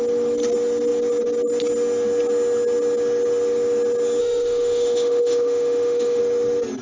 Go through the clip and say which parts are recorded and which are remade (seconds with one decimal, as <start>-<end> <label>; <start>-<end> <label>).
0.0-4.2 recorded; 4.2-6.2 remade; 6.2-6.8 recorded